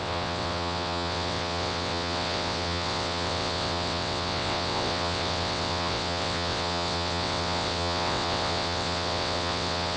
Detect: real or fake fake